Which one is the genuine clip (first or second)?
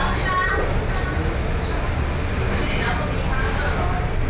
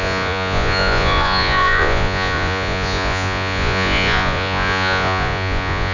first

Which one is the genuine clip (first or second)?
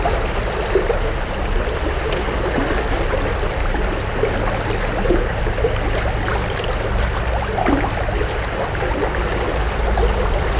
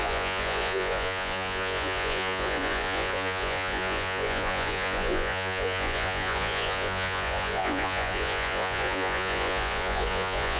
first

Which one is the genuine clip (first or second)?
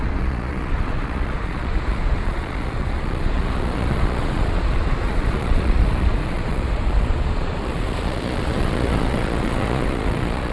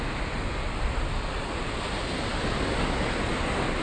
second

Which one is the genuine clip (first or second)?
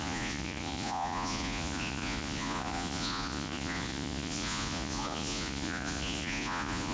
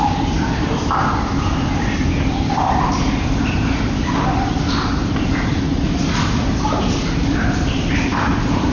second